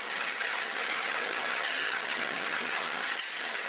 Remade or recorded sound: remade